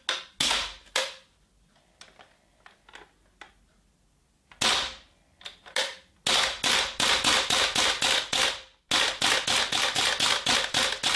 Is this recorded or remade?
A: recorded